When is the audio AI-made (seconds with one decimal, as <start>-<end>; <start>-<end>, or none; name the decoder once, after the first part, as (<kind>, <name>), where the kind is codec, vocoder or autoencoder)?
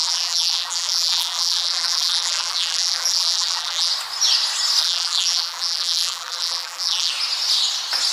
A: 0.0-3.9 (vocoder, BigVGAN v2); 4.8-7.1